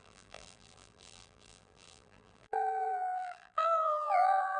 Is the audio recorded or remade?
remade